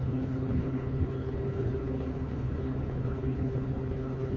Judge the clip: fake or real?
fake